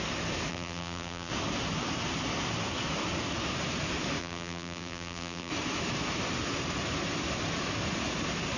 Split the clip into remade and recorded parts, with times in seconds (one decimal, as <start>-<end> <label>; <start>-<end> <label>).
0.0-0.5 recorded; 0.5-1.3 remade; 1.3-4.2 recorded; 4.2-5.5 remade; 5.5-8.6 recorded